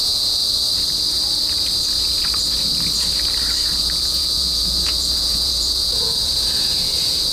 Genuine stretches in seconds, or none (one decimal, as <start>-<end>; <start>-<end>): 0.4-3.7